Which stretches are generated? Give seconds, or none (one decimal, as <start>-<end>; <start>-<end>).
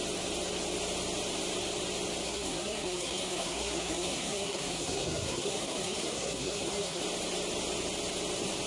2.2-7.0